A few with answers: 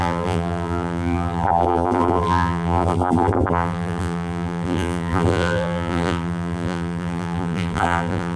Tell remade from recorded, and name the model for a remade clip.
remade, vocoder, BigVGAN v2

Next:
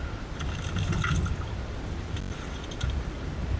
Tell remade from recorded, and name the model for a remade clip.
recorded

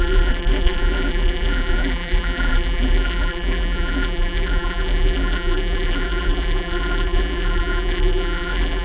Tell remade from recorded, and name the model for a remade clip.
remade, vocoder, BigVGAN v2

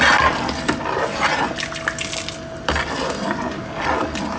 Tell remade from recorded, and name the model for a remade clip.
recorded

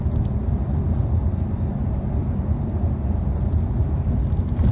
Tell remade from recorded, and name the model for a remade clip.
recorded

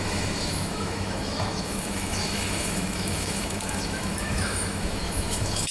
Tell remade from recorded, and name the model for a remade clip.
remade, autoencoder, DAC-VAE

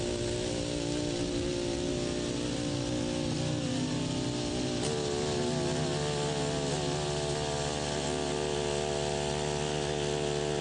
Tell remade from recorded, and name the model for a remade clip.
recorded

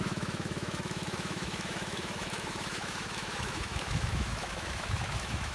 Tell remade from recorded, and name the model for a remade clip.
remade, autoencoder, DAC-VAE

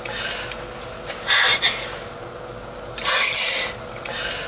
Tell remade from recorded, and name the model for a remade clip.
recorded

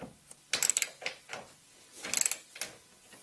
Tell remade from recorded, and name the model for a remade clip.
recorded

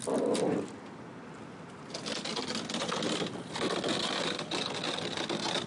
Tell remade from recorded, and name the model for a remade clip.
recorded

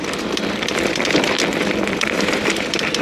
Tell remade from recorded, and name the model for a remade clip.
remade, vocoder, BigVGAN v2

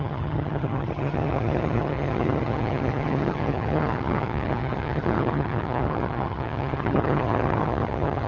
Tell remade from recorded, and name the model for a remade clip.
remade, vocoder, HiFi-GAN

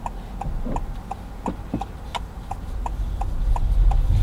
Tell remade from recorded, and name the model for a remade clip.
recorded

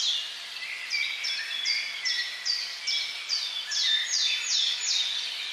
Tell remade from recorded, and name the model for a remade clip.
recorded